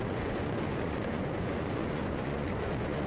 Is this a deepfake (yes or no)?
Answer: yes